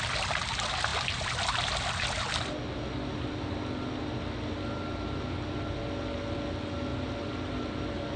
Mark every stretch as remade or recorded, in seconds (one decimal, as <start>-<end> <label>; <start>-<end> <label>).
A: 0.0-6.9 recorded; 6.9-7.7 remade; 7.7-8.2 recorded